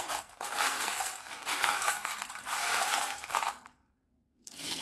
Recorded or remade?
remade